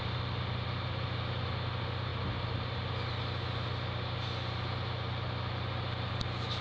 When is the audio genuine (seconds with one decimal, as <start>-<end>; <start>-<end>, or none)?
0.0-6.6